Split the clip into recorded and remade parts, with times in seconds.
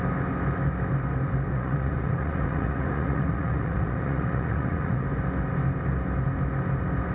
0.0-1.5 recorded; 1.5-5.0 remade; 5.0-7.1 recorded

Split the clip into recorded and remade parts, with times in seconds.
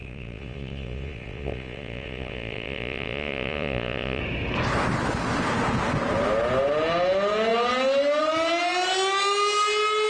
0.0-4.2 remade; 4.2-10.1 recorded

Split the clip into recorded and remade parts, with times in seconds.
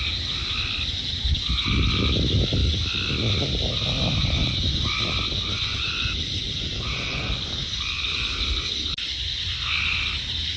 0.0-4.4 recorded; 4.4-4.9 remade; 4.9-5.7 recorded; 5.7-7.5 remade; 7.5-10.6 recorded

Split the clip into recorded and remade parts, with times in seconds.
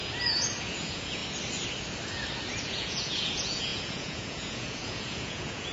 0.0-0.6 recorded; 0.6-1.2 remade; 1.2-2.6 recorded; 2.6-5.7 remade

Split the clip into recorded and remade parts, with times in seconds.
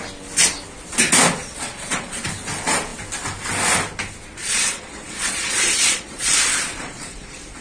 0.0-1.4 recorded; 1.4-2.3 remade; 2.3-4.4 recorded; 4.4-7.6 remade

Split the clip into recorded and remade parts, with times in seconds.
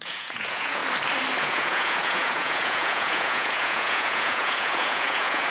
0.0-0.8 remade; 0.8-1.4 recorded; 1.4-5.5 remade